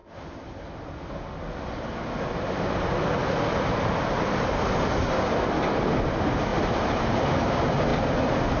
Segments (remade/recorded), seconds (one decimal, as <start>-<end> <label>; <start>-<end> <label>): 0.0-8.6 recorded